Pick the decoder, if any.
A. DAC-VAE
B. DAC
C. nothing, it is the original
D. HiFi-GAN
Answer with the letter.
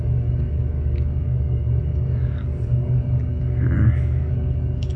B